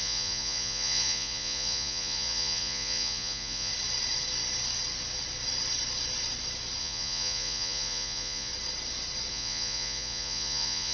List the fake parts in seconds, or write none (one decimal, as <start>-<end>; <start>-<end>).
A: 0.0-3.7; 6.8-8.5; 9.3-10.9